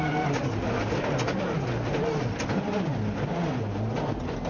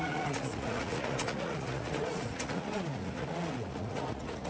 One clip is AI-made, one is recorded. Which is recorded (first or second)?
first